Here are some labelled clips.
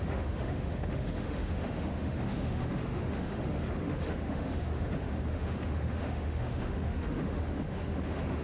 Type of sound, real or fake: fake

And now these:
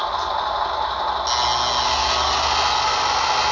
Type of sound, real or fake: real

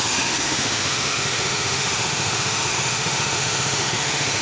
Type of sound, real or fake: fake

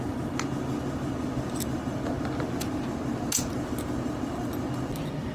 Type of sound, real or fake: real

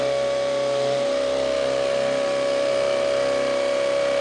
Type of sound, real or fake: real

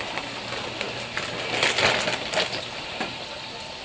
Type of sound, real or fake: real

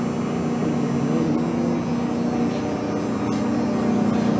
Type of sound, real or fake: real